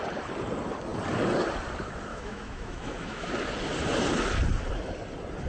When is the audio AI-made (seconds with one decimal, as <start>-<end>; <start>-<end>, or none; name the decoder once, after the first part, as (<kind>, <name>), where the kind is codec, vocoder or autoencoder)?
2.1-3.3 (autoencoder, DAC-VAE)